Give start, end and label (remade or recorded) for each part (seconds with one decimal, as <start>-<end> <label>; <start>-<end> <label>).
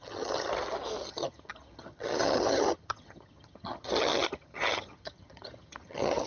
0.0-0.5 remade; 0.5-1.0 recorded; 1.0-6.3 remade